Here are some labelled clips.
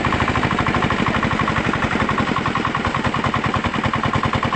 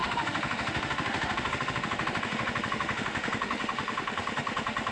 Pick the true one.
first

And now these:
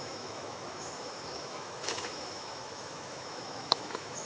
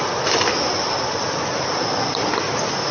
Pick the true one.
second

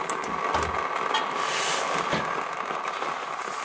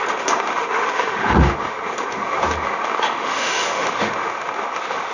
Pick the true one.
first